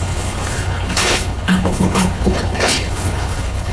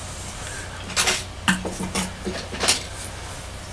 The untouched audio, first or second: second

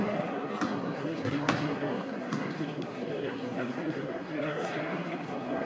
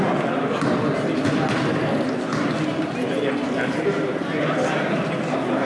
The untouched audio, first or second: second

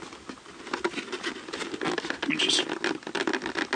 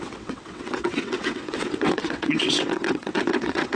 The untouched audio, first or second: first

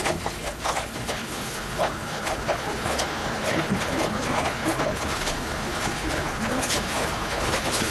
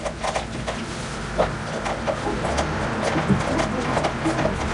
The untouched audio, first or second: second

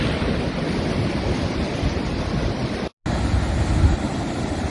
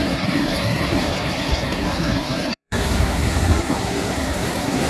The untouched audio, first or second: first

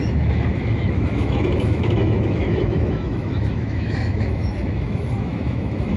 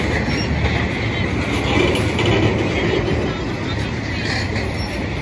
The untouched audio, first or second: second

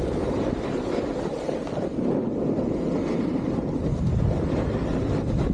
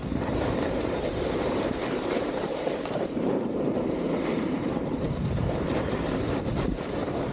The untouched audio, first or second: first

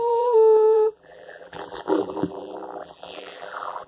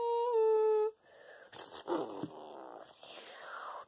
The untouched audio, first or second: second